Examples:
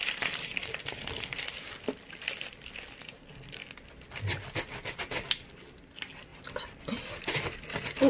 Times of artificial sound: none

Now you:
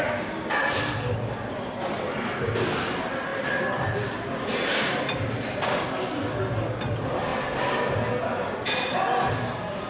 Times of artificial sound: none